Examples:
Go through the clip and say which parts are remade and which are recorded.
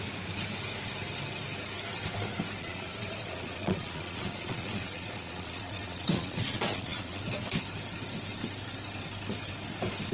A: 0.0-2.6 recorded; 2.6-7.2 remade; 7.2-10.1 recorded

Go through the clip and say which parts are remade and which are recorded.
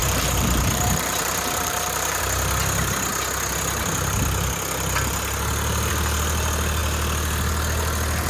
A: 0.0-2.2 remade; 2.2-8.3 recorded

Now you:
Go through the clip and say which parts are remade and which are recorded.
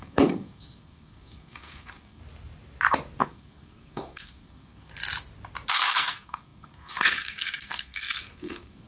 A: 0.0-2.2 remade; 2.2-3.2 recorded; 3.2-4.9 remade; 4.9-5.7 recorded; 5.7-8.9 remade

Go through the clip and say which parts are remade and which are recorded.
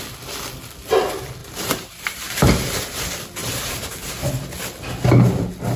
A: 0.0-1.4 recorded; 1.4-3.0 remade; 3.0-3.4 recorded; 3.4-4.3 remade; 4.3-5.8 recorded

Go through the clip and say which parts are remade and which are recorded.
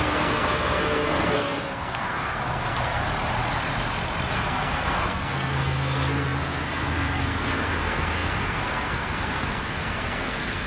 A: 0.0-3.0 remade; 3.0-4.3 recorded; 4.3-10.7 remade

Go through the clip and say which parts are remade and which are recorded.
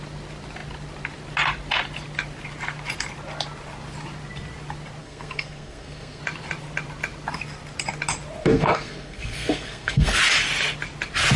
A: 0.0-5.0 recorded; 5.0-6.2 remade; 6.2-8.4 recorded; 8.4-10.2 remade; 10.2-11.4 recorded